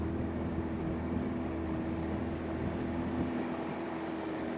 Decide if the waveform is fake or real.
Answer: real